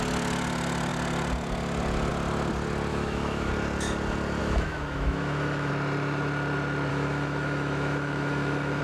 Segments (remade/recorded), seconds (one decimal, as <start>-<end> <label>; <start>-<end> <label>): 0.0-2.9 recorded; 2.9-3.5 remade; 3.5-4.4 recorded; 4.4-5.7 remade; 5.7-6.9 recorded; 6.9-8.8 remade